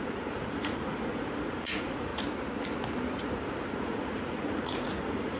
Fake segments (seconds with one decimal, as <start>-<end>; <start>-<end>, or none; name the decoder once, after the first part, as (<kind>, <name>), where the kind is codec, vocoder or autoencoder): 0.0-2.1 (vocoder, Vocos); 3.7-5.4